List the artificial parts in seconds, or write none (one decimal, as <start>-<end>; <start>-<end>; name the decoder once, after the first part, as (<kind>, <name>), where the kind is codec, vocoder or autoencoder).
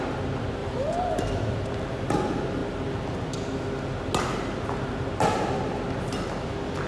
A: 0.6-1.2 (vocoder, BigVGAN v2)